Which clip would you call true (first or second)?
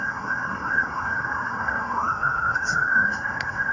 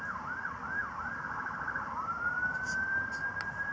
second